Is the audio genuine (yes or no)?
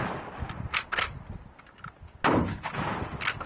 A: yes